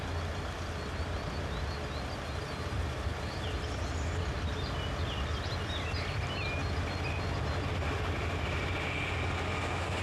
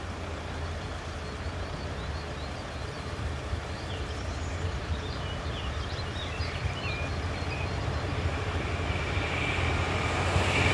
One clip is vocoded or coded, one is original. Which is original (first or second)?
first